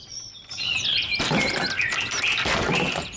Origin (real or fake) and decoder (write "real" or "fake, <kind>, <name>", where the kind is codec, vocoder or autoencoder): real